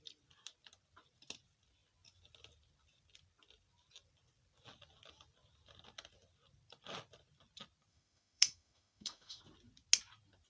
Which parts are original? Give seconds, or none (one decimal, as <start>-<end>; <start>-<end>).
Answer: 0.0-7.9; 9.4-10.5